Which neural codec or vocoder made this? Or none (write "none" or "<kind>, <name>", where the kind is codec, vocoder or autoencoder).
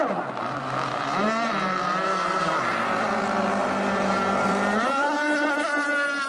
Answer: vocoder, BigVGAN v2